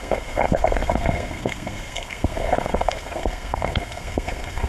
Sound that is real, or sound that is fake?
fake